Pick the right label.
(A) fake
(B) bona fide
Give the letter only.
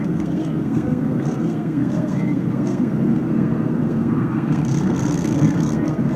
A